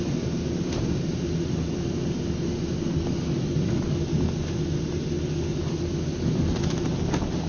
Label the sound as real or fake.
real